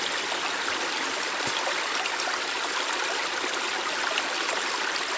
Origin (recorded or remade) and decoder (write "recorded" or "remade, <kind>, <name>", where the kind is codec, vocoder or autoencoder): recorded